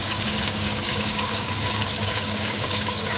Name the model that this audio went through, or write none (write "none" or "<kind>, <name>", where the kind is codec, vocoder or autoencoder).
codec, DAC